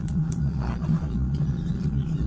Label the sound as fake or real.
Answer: fake